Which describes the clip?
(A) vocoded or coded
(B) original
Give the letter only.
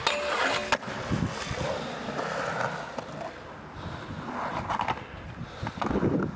B